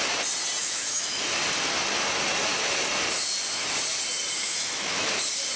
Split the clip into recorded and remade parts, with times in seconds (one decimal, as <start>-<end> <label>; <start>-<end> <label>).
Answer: 0.0-0.6 recorded; 0.6-1.4 remade; 1.4-4.4 recorded; 4.4-5.1 remade; 5.1-5.6 recorded